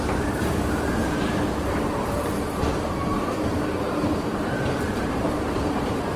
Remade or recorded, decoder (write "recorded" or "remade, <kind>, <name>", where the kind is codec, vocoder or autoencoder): remade, vocoder, BigVGAN v2